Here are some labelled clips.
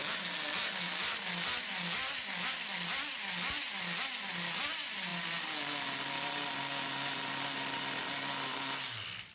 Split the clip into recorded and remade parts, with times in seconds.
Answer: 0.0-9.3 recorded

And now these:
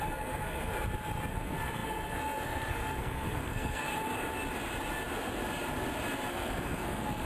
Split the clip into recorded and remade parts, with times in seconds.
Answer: 0.0-0.7 remade; 0.7-1.3 recorded; 1.3-3.9 remade; 3.9-6.3 recorded; 6.3-7.3 remade

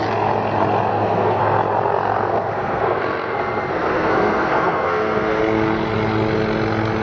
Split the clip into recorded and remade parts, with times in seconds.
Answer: 0.0-0.9 recorded; 0.9-1.4 remade; 1.4-2.3 recorded; 2.3-5.4 remade; 5.4-7.0 recorded